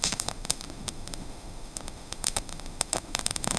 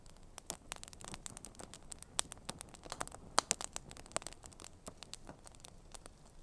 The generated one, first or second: first